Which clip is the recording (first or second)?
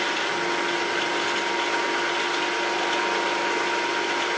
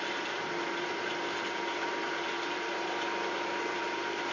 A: first